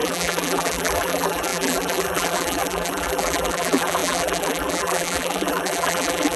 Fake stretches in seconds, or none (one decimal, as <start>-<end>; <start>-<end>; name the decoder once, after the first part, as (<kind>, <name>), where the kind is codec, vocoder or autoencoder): 0.0-6.4 (vocoder, BigVGAN v2)